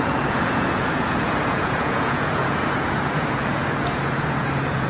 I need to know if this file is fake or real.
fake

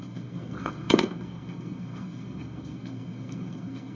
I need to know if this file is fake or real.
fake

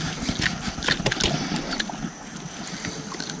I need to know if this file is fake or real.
real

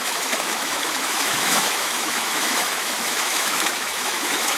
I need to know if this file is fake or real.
fake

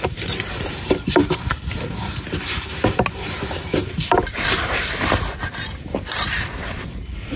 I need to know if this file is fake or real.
fake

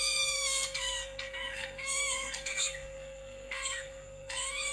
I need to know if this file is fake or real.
fake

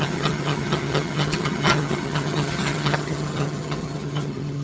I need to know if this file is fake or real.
fake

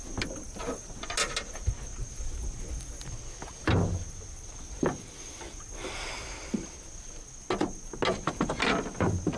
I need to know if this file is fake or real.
real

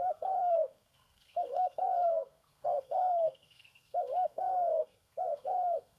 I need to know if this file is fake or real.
fake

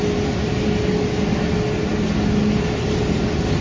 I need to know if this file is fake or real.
real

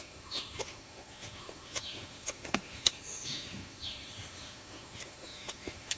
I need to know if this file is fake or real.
fake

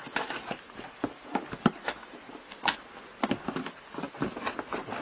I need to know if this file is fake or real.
real